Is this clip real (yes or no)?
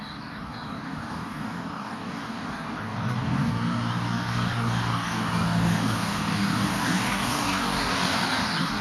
no